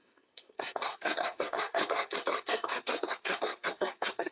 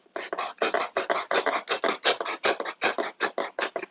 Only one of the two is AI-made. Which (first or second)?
first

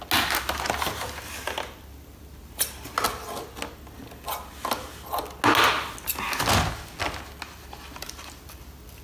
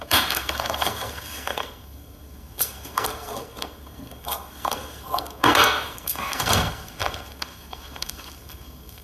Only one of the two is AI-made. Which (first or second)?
second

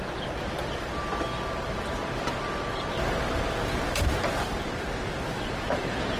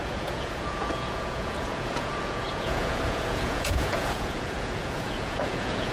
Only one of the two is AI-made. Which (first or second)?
second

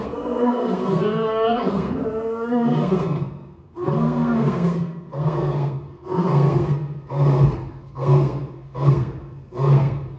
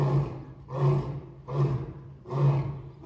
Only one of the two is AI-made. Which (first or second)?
first